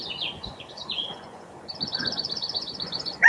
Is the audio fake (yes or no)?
yes